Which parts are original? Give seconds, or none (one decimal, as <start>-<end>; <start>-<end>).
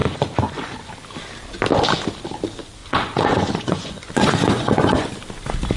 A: 0.9-2.8; 5.1-5.8